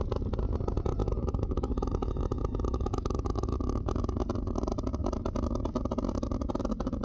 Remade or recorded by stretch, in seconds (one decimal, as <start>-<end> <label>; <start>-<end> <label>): 0.0-1.0 recorded; 1.0-3.9 remade; 3.9-7.0 recorded